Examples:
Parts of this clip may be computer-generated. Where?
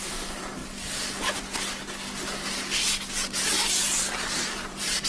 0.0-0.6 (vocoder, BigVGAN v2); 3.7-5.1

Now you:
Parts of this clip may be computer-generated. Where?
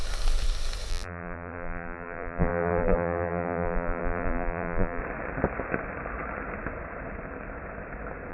0.9-5.0 (vocoder, BigVGAN v2)